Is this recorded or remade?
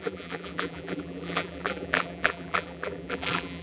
remade